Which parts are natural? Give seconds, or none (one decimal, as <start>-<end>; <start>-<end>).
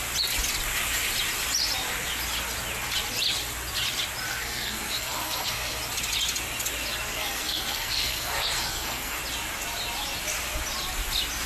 0.0-4.3; 5.8-7.1; 9.2-11.5